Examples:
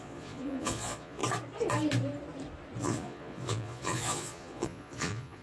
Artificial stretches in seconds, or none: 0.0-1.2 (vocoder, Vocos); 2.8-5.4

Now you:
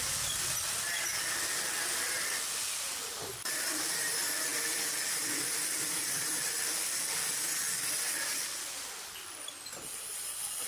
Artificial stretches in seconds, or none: none

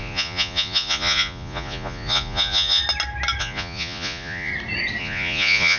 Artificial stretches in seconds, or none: 0.0-2.8 (vocoder, Vocos); 3.4-4.5; 5.0-5.8